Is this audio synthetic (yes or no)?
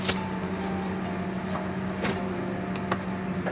no